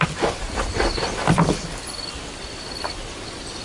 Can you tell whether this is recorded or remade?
recorded